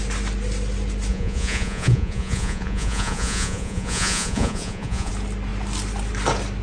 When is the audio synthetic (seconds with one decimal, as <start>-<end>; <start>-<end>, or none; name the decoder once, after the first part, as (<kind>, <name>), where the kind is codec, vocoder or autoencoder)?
1.1-5.1 (vocoder, Vocos)